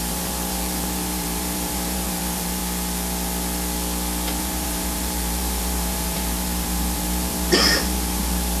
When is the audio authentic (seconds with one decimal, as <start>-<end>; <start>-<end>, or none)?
2.6-4.4